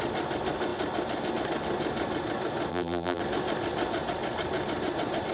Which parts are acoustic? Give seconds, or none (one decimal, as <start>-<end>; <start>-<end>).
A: 0.0-2.7; 3.2-5.3